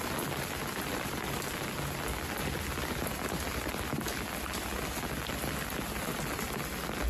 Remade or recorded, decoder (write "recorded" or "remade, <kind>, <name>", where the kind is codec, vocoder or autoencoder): recorded